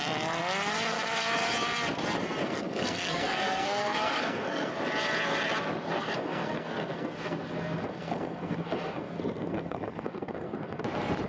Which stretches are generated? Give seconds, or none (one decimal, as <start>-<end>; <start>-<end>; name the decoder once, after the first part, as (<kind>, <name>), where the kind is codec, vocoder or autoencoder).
2.4-4.7 (codec, SNAC); 5.8-10.8